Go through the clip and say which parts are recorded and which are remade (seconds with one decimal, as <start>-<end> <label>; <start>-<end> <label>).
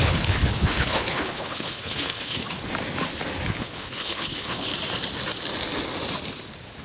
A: 0.0-2.4 remade; 2.4-3.5 recorded; 3.5-4.7 remade; 4.7-6.8 recorded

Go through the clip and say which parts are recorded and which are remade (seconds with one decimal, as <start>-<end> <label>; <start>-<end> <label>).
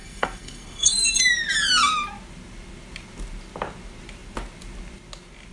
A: 0.0-1.2 remade; 1.2-5.5 recorded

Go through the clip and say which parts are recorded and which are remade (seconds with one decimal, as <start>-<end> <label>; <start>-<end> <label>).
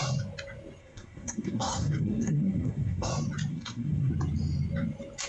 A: 0.0-0.8 recorded; 0.8-3.1 remade; 3.1-3.5 recorded; 3.5-4.1 remade; 4.1-5.3 recorded